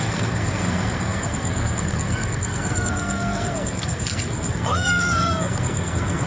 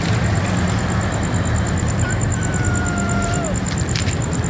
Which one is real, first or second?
second